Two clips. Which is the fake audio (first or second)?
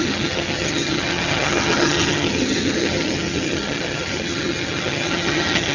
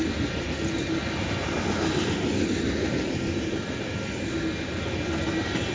first